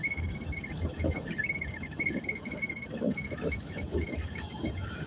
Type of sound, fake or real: fake